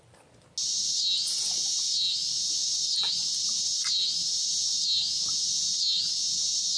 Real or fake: real